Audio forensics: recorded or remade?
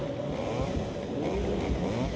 recorded